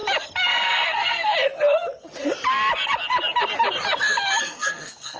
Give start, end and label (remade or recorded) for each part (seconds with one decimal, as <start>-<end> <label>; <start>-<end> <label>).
0.0-0.5 recorded; 0.5-1.3 remade; 1.3-4.4 recorded; 4.4-5.2 remade